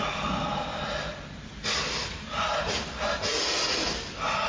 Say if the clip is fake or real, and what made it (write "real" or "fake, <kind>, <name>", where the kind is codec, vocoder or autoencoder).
real